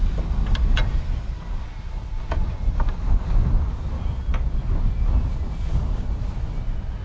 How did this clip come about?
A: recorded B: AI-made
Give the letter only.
A